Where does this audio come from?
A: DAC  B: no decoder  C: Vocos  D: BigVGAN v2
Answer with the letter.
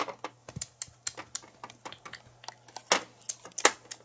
B